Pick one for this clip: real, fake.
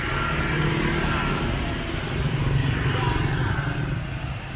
real